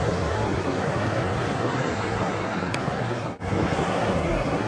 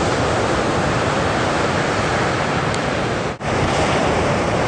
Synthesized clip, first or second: first